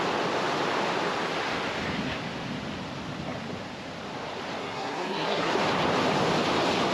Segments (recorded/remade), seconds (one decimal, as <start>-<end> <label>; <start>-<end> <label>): 0.0-4.6 recorded; 4.6-5.5 remade; 5.5-6.9 recorded